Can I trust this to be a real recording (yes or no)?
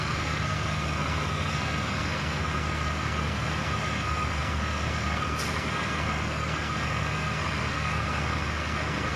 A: no